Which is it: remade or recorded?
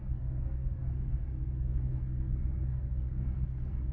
remade